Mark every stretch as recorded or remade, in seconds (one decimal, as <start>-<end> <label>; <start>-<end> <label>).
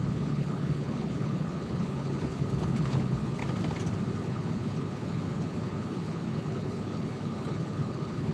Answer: 0.0-3.4 remade; 3.4-4.2 recorded; 4.2-8.3 remade